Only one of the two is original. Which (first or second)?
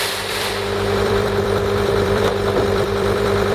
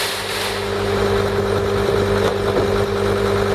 second